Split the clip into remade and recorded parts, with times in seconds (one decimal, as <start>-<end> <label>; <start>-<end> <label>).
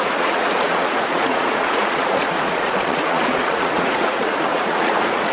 0.0-5.3 remade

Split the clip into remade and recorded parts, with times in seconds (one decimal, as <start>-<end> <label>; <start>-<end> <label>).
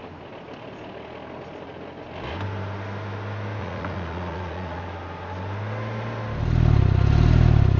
0.0-3.6 recorded; 3.6-4.8 remade; 4.8-7.8 recorded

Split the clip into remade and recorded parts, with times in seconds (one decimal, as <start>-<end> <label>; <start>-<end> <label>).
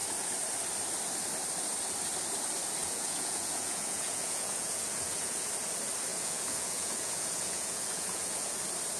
0.0-2.8 recorded; 2.8-5.5 remade; 5.5-6.1 recorded; 6.1-8.6 remade; 8.6-9.0 recorded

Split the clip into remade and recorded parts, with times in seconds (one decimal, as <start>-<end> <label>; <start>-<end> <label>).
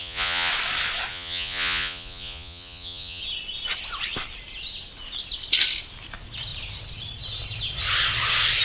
0.0-0.5 remade; 0.5-1.1 recorded; 1.1-3.2 remade; 3.2-8.6 recorded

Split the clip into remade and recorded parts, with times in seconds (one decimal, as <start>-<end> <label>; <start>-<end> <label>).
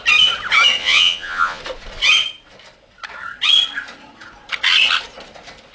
0.0-0.8 recorded; 0.8-1.6 remade; 1.6-5.7 recorded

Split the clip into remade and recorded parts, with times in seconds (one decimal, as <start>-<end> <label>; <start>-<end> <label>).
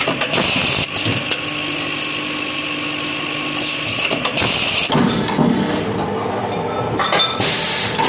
0.0-8.1 recorded